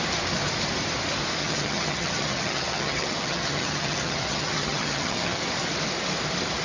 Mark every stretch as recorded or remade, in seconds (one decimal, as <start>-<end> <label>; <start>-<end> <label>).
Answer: 0.0-1.4 recorded; 1.4-5.4 remade; 5.4-6.6 recorded